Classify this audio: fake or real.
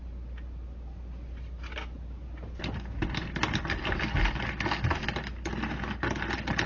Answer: real